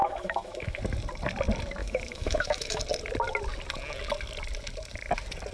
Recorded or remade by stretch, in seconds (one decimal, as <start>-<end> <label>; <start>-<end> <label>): 0.0-0.8 remade; 0.8-1.8 recorded; 1.8-2.8 remade; 2.8-5.5 recorded